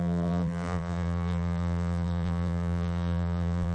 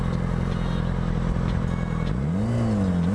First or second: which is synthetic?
first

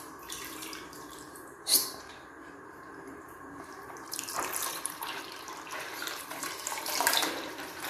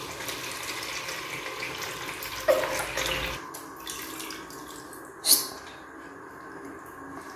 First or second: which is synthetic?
first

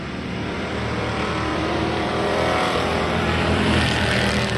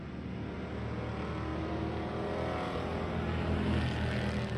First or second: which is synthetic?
first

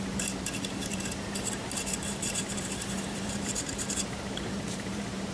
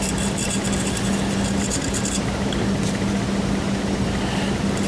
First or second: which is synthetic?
first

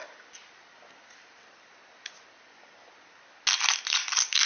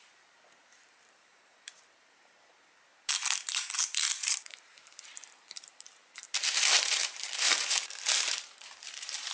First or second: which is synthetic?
second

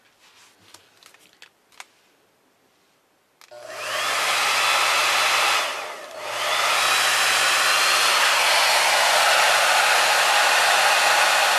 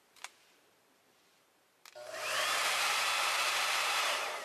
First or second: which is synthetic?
second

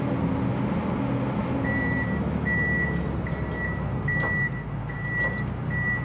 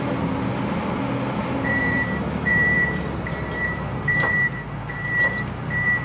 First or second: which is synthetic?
second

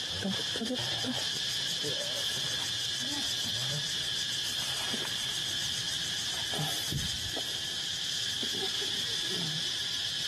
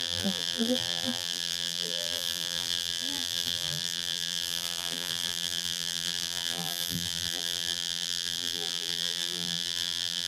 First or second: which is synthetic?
second